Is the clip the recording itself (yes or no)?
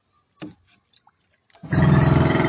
yes